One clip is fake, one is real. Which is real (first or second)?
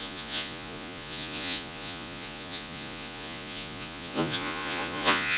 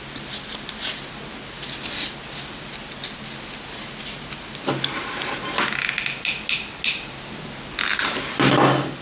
second